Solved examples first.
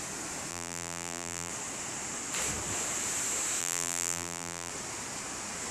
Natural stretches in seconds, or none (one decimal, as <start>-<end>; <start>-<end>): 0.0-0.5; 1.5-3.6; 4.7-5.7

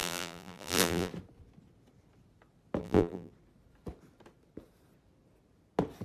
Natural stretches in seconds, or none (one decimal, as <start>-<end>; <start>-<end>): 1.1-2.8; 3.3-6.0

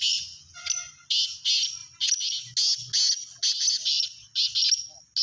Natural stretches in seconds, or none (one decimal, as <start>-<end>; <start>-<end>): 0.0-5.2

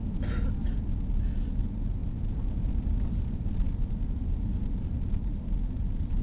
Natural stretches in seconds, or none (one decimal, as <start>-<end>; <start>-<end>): 0.0-6.2